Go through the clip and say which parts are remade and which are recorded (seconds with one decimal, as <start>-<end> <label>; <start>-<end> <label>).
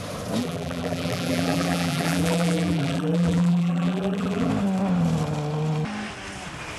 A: 0.0-0.4 recorded; 0.4-4.5 remade; 4.5-6.8 recorded